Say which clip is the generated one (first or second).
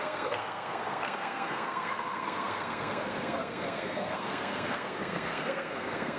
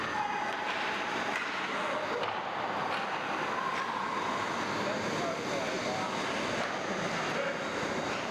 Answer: first